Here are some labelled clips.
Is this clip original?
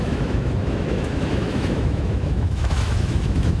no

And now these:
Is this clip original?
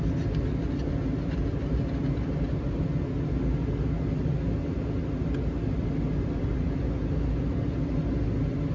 yes